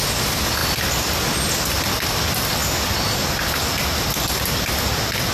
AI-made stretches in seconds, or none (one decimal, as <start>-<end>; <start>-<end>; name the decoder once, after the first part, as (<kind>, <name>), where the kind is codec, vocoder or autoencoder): none